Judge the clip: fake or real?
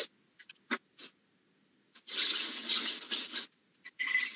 real